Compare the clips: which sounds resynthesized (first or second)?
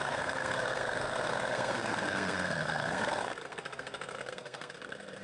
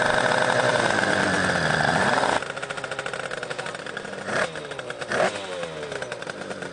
first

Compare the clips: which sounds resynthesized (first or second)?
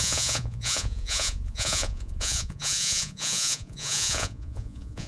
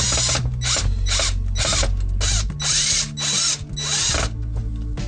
first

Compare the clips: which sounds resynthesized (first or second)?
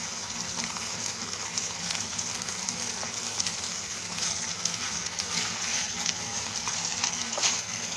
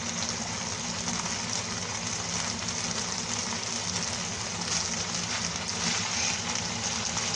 first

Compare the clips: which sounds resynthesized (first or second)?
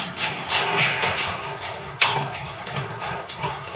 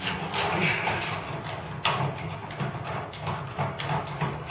first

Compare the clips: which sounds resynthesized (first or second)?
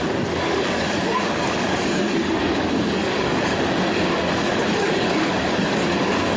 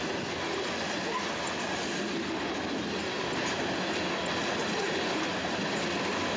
first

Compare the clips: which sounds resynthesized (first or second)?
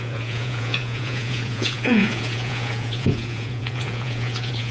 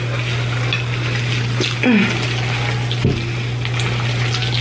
first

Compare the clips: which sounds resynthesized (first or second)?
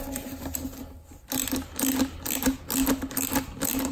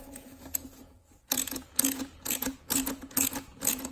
second